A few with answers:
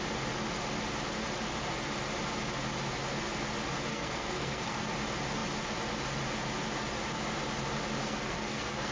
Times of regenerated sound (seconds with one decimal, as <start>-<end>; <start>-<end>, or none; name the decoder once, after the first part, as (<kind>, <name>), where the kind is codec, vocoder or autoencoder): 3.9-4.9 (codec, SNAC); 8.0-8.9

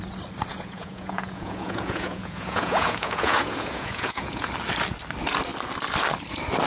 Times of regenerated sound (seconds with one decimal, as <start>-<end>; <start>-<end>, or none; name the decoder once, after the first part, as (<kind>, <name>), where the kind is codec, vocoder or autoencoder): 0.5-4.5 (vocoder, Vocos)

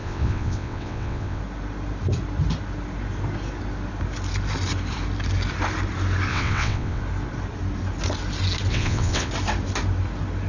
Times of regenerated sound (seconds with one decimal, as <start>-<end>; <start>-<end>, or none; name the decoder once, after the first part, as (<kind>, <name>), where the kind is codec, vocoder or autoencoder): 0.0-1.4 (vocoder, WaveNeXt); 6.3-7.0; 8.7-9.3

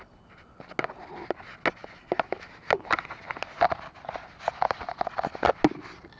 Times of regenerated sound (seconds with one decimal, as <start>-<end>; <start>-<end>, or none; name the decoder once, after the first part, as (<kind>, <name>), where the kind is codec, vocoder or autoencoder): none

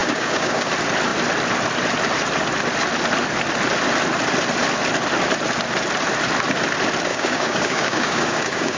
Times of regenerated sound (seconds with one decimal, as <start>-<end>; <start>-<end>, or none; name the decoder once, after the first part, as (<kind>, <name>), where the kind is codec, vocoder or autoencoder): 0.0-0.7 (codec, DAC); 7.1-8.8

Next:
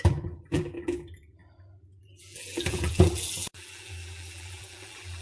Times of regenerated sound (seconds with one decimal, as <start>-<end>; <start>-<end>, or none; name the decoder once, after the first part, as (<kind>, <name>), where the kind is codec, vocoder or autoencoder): 0.0-5.2 (vocoder, BigVGAN v2)

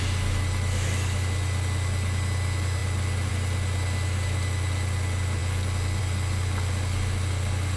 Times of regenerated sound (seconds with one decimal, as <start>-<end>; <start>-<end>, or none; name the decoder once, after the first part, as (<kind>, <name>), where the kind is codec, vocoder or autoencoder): none